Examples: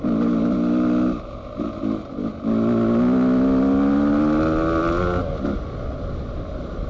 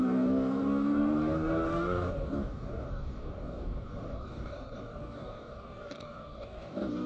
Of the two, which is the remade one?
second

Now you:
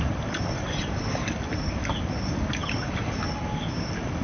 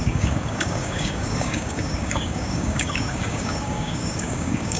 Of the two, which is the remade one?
second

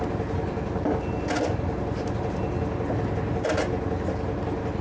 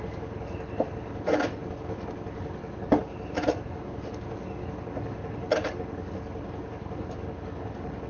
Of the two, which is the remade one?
second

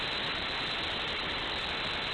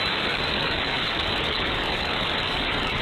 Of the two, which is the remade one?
second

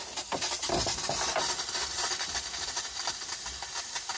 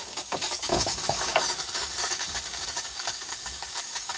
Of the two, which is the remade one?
second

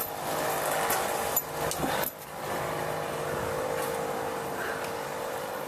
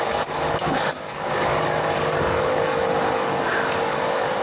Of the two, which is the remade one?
second